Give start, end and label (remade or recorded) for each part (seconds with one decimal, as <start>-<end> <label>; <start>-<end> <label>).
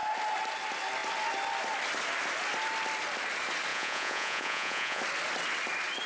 0.0-3.7 recorded; 3.7-5.0 remade; 5.0-6.1 recorded